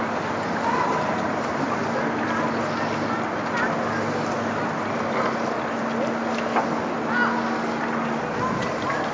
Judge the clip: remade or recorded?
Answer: recorded